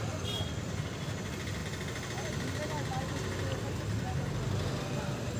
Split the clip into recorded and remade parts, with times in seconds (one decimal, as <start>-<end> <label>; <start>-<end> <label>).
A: 0.0-1.6 remade; 1.6-4.8 recorded; 4.8-5.4 remade